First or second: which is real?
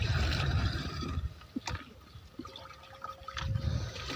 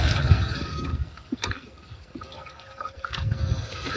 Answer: first